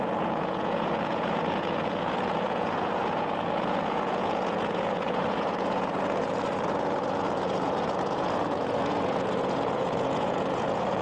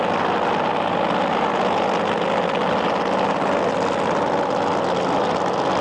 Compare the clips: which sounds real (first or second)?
second